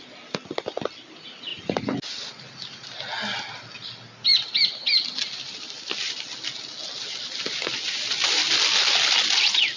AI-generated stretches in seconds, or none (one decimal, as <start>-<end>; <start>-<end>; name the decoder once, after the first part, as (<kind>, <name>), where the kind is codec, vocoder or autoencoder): none